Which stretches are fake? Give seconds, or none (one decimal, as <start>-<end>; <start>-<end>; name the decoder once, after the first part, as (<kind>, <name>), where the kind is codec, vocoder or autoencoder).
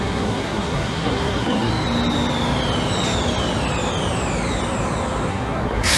0.0-1.7 (codec, SNAC); 5.3-6.0